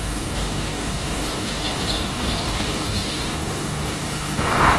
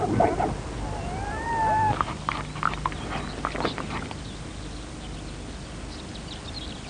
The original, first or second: second